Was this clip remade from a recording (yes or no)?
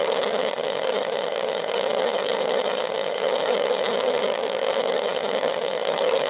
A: yes